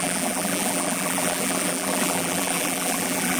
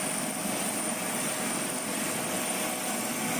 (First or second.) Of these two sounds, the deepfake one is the first